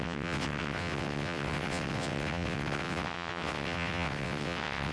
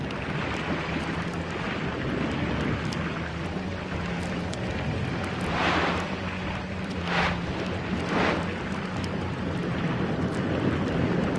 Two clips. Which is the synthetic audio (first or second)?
first